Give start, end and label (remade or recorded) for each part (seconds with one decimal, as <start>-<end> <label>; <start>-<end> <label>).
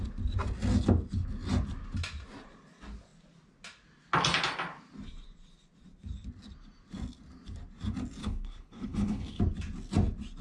0.0-8.2 recorded; 8.2-9.4 remade; 9.4-10.4 recorded